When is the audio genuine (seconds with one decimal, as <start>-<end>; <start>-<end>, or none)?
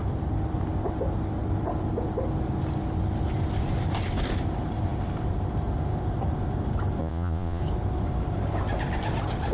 0.0-7.0; 7.6-9.5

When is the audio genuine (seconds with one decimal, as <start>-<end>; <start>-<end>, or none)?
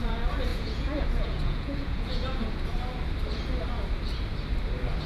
0.0-0.5; 2.6-5.1